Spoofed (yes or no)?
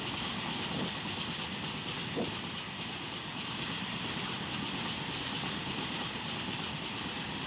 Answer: no